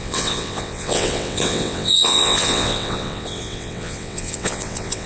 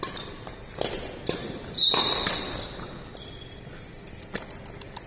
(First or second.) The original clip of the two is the second